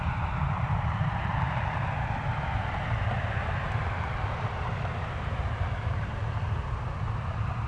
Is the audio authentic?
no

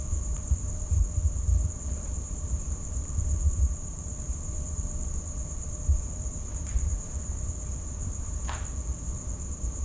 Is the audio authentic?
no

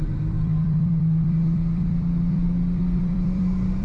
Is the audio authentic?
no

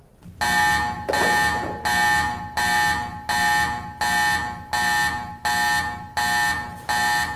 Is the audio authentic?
yes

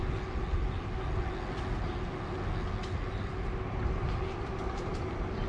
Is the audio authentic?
yes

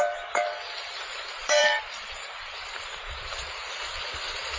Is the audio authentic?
no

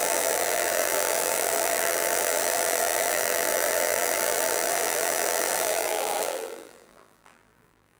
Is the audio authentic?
no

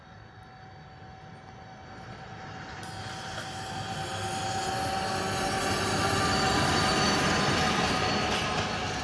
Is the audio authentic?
yes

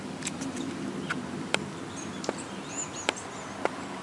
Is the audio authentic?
yes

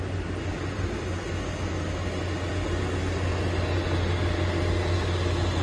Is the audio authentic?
yes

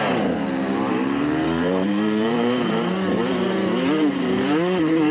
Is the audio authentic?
no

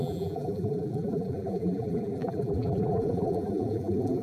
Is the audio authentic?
no